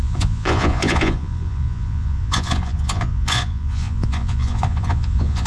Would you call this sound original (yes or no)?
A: no